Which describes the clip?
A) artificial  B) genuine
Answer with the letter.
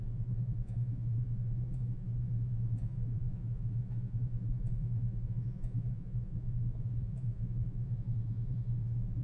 A